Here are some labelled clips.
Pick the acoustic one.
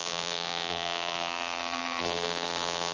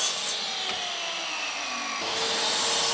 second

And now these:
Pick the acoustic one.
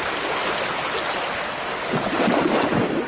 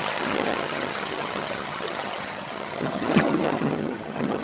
first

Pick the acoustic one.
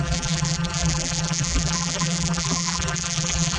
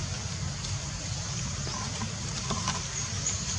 second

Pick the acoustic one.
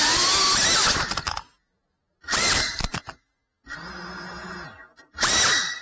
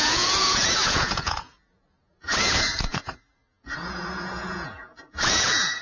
first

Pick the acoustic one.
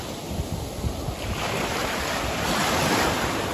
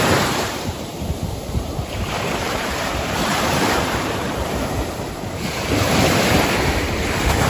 first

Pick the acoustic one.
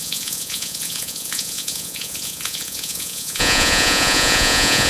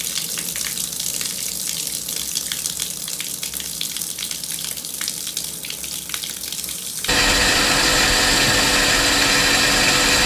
second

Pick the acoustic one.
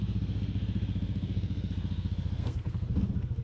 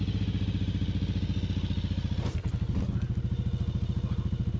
second